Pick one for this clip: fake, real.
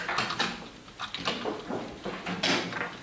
real